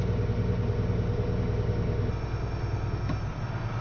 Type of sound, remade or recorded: recorded